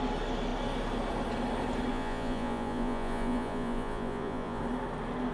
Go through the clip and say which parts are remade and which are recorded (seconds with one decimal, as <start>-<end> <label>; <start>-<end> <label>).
0.0-1.9 recorded; 1.9-4.6 remade; 4.6-5.3 recorded